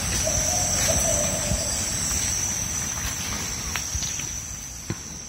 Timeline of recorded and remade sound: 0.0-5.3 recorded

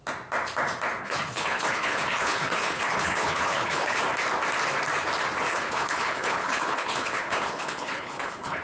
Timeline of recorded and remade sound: 0.0-1.0 recorded; 1.0-4.0 remade; 4.0-5.5 recorded; 5.5-8.6 remade

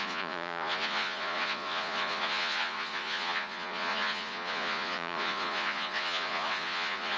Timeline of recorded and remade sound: 0.0-7.2 remade

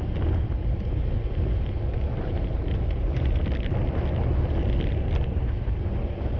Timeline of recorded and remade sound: 0.0-6.4 recorded